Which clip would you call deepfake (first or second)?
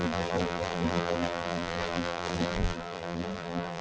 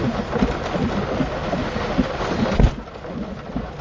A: first